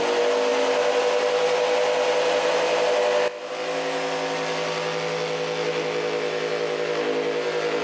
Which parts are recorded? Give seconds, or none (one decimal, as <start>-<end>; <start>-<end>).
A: 0.0-7.8